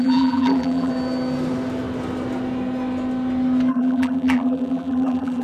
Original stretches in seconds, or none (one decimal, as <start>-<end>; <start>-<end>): 0.9-3.7